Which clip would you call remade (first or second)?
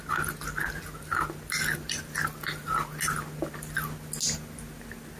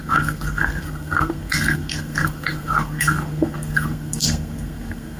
second